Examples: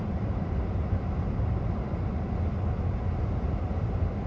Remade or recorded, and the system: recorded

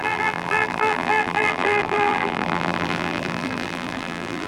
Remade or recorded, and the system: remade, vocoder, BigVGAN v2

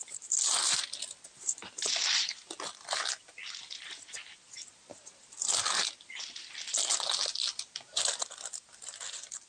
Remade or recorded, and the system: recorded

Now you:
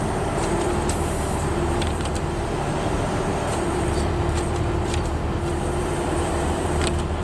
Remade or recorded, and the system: remade, vocoder, BigVGAN v2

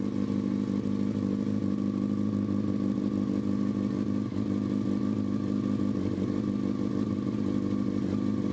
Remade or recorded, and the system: recorded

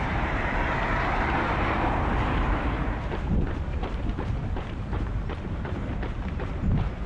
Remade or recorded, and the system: remade, vocoder, BigVGAN v2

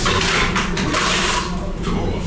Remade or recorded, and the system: remade, vocoder, BigVGAN v2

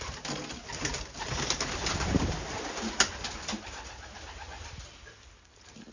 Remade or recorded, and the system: recorded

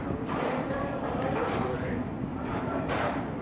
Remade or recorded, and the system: remade, vocoder, BigVGAN v2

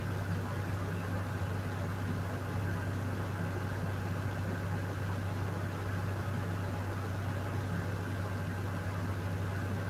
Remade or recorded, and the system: recorded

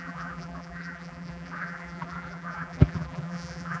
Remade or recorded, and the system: remade, vocoder, BigVGAN v2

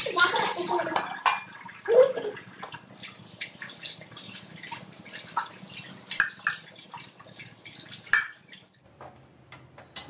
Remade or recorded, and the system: recorded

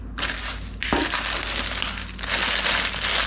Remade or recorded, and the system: recorded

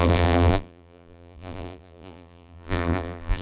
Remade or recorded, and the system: remade, vocoder, BigVGAN v2